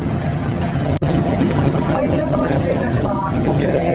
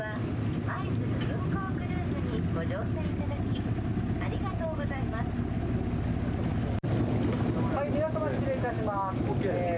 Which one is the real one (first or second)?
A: second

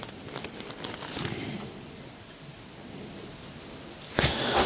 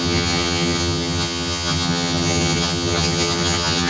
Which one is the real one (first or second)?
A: first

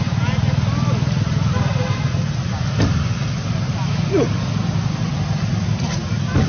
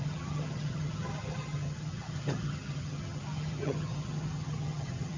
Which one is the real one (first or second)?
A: first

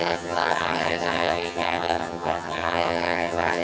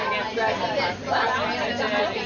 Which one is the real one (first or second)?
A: second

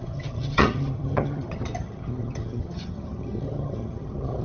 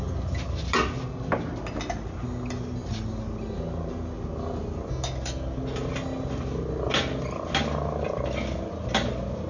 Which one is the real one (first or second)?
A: second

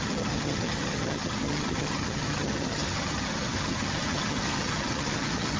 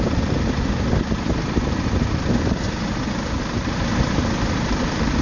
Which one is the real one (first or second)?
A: second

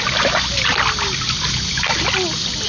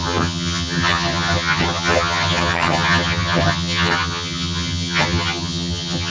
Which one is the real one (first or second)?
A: first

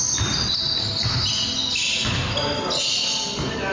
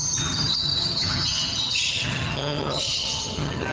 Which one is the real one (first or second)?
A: first